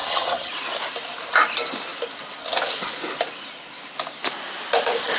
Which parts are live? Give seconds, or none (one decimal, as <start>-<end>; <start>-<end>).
0.5-5.2